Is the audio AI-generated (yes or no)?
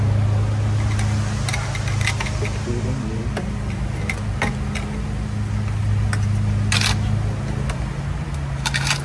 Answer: no